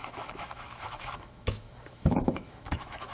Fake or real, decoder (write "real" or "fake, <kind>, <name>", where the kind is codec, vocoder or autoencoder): fake, autoencoder, DAC-VAE